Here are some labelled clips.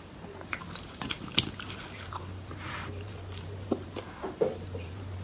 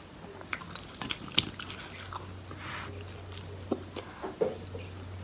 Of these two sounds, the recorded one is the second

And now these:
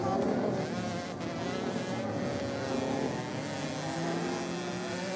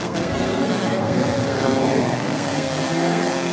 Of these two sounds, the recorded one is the first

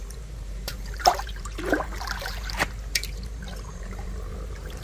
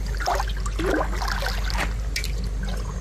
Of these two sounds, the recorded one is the second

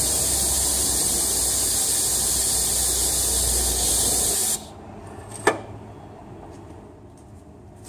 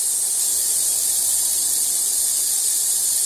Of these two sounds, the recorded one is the first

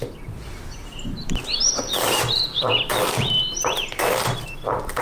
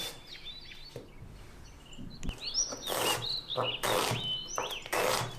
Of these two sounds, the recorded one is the second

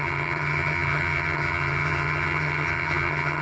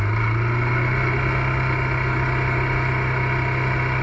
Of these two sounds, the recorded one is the second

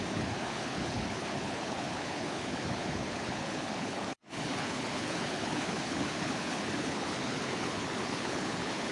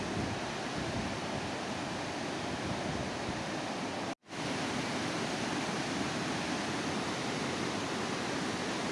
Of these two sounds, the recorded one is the second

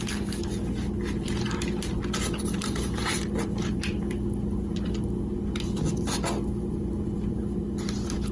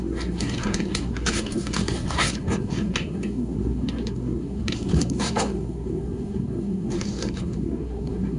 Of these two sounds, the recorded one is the first